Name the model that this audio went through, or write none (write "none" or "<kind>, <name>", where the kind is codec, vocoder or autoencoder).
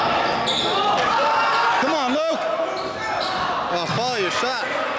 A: none